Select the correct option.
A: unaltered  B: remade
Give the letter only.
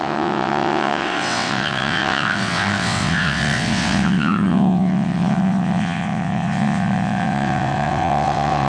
B